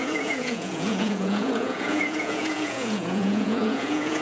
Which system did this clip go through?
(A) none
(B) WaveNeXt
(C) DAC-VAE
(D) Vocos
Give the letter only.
D